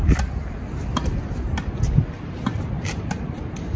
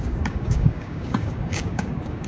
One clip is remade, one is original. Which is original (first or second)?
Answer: first